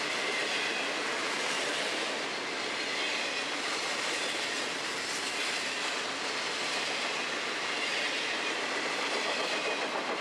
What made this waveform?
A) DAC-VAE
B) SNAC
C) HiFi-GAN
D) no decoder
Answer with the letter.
D